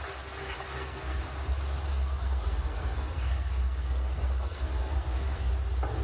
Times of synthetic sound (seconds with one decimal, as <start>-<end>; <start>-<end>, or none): 0.7-1.2; 1.9-5.5